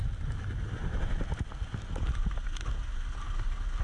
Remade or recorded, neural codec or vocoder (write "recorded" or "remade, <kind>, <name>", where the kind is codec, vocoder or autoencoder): recorded